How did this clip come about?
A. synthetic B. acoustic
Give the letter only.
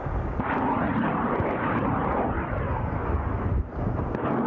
B